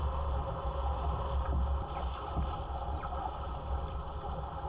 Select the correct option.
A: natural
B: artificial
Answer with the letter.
A